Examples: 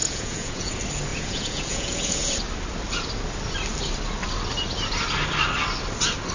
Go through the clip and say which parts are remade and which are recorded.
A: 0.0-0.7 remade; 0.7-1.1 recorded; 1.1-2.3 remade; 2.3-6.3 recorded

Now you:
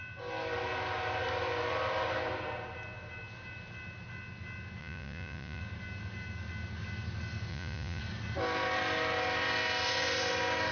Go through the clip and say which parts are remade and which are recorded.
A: 0.0-4.8 recorded; 4.8-5.6 remade; 5.6-7.5 recorded; 7.5-8.0 remade; 8.0-10.7 recorded

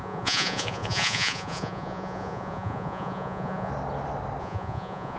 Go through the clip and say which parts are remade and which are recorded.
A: 0.0-3.7 remade; 3.7-4.4 recorded; 4.4-5.2 remade

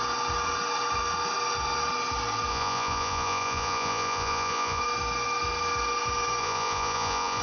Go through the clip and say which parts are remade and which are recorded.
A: 0.0-2.5 recorded; 2.5-4.8 remade; 4.8-6.4 recorded; 6.4-7.4 remade